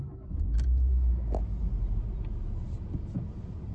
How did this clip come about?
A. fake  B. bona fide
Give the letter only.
B